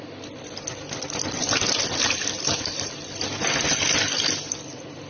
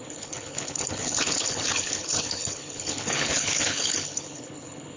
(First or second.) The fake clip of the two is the second